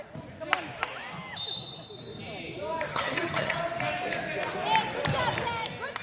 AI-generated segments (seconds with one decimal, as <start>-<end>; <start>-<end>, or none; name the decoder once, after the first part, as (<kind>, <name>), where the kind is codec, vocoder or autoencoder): 2.9-3.6 (vocoder, HiFi-GAN)